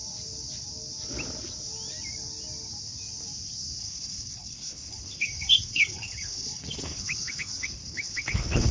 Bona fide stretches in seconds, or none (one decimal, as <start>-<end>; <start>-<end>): 0.0-3.8